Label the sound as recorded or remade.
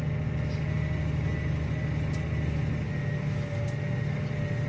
recorded